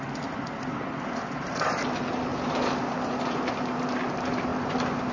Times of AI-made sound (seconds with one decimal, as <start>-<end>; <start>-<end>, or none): none